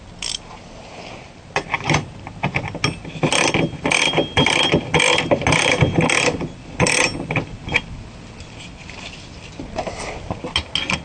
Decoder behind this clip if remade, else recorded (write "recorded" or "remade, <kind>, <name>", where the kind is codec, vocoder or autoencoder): recorded